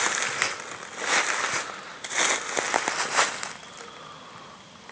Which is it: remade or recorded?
recorded